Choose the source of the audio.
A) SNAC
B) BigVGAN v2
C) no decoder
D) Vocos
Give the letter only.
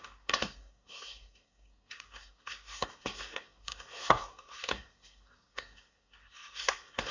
A